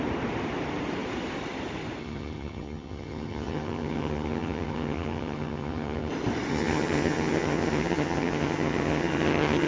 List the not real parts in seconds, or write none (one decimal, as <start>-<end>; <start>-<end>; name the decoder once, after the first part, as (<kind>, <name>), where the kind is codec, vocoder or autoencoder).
2.0-6.1 (vocoder, HiFi-GAN); 6.5-9.7